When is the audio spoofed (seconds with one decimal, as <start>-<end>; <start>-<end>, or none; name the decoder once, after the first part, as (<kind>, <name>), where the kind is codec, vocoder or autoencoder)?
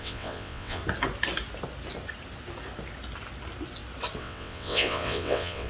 0.0-0.8 (vocoder, WaveNeXt); 4.2-5.7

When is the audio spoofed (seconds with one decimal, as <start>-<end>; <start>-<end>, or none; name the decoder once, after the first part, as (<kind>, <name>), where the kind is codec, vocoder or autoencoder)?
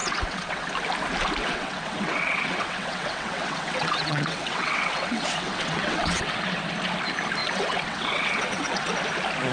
0.0-0.7 (vocoder, WaveNeXt); 1.4-6.6; 7.4-8.9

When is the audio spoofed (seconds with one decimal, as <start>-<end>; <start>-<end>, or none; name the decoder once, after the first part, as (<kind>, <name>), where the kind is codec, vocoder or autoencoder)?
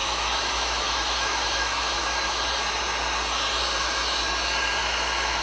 0.0-2.5 (autoencoder, DAC-VAE); 4.8-5.4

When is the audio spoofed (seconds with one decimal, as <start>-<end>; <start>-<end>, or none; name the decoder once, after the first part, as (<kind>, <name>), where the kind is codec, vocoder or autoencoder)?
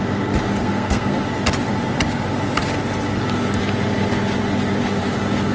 0.6-1.2 (codec, SNAC)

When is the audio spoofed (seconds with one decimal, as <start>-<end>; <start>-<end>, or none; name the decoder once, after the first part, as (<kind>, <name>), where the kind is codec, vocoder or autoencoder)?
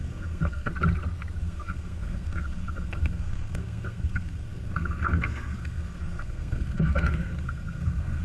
0.0-0.7 (codec, SNAC); 1.4-8.2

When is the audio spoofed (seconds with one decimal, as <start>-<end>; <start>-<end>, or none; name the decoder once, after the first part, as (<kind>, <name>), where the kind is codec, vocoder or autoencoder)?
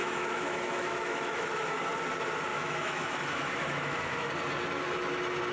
0.0-1.8 (autoencoder, DAC-VAE); 2.5-4.3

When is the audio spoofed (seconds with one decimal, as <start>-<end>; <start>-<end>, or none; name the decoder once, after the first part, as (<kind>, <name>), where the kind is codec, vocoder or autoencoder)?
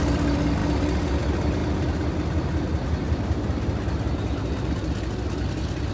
none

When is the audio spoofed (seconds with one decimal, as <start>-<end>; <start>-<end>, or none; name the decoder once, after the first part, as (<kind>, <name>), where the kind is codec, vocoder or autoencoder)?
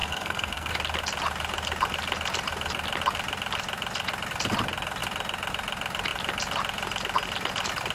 0.0-0.7 (codec, SNAC)